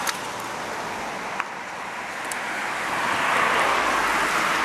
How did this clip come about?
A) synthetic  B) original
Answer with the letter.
B